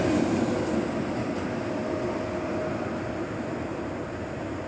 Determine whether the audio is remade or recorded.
recorded